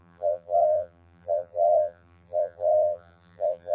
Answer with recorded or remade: remade